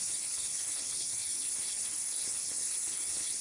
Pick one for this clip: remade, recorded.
remade